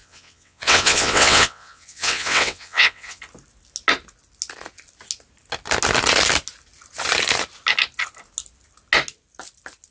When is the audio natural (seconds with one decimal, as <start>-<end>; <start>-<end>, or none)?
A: 3.2-9.9